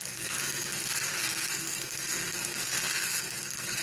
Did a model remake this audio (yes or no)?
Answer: yes